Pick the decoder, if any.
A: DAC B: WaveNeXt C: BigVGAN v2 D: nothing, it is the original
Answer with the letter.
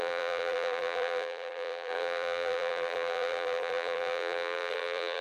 C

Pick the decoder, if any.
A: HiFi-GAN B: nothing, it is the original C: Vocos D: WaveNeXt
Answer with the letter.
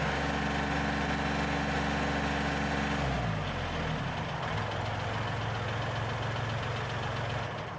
B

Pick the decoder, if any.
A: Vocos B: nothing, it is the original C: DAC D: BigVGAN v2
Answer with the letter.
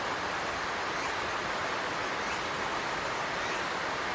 B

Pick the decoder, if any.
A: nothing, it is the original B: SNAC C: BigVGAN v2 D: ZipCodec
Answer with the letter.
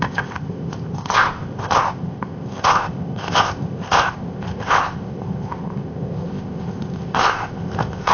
D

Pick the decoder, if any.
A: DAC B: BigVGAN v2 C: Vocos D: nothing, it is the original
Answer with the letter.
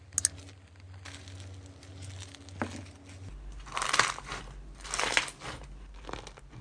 D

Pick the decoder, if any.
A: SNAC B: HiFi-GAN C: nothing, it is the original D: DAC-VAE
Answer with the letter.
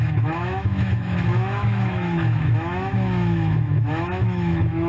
D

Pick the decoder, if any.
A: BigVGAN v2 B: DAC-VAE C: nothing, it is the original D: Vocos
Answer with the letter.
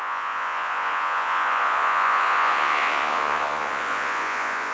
D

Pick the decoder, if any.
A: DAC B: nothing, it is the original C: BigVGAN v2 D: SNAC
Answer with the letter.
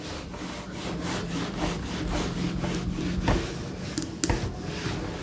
B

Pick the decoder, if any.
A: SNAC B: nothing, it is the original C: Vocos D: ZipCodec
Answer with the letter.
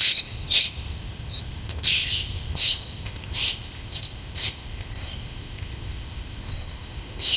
D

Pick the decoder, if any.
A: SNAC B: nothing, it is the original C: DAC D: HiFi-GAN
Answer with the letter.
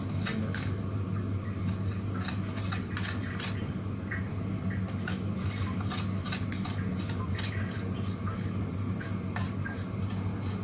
B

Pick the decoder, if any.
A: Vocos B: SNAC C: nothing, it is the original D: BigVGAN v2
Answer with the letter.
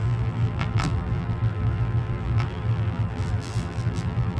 D